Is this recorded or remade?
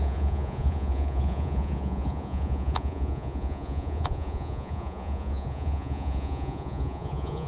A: remade